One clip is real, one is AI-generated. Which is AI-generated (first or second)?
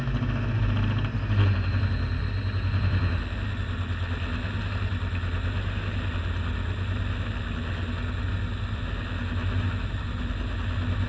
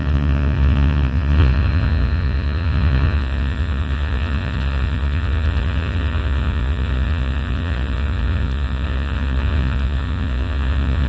second